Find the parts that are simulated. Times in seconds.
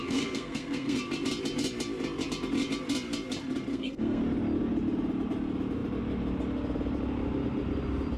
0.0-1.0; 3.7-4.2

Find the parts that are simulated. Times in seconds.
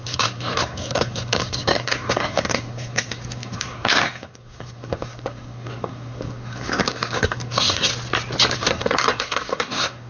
0.0-7.9; 8.5-10.1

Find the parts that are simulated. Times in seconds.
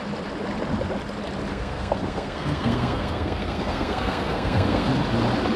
1.5-4.9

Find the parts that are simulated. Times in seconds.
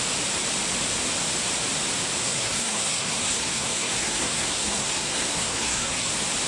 2.2-6.1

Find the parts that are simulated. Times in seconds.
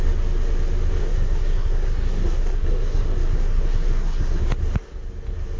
1.0-4.4